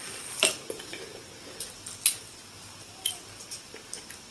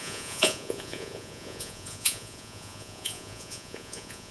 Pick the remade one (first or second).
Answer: second